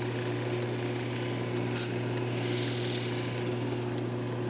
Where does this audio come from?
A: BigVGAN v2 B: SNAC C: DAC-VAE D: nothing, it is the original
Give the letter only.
D